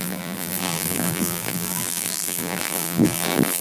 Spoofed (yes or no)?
yes